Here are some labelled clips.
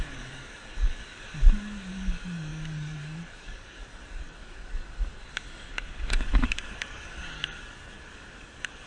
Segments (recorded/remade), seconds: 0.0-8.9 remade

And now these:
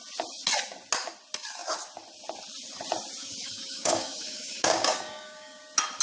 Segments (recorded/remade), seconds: 0.0-3.2 recorded; 3.2-5.6 remade; 5.6-6.0 recorded

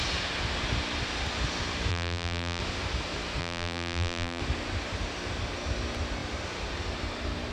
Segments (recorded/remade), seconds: 0.0-1.9 recorded; 1.9-2.6 remade; 2.6-3.4 recorded; 3.4-4.4 remade; 4.4-7.5 recorded

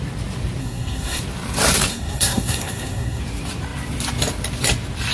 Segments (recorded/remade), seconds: 0.0-0.6 recorded; 0.6-1.2 remade; 1.2-1.9 recorded; 1.9-3.2 remade; 3.2-5.1 recorded

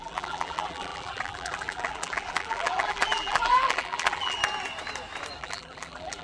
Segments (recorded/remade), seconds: 0.0-4.4 remade; 4.4-5.4 recorded; 5.4-6.2 remade

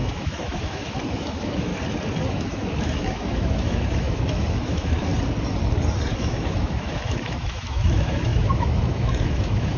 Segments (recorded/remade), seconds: 0.0-1.7 remade; 1.7-2.3 recorded; 2.3-5.1 remade; 5.1-6.1 recorded; 6.1-9.8 remade

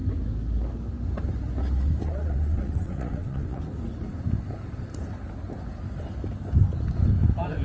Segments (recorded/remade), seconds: 0.0-2.0 recorded; 2.0-3.6 remade; 3.6-7.6 recorded